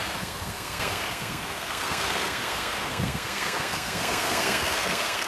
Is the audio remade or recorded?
remade